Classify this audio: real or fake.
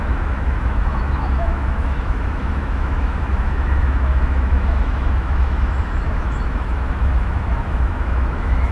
fake